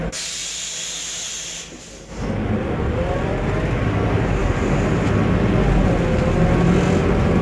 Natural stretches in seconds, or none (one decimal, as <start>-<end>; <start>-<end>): 0.0-4.4; 5.1-7.4